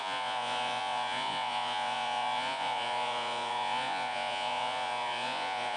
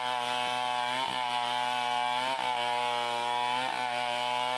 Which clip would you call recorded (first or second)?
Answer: second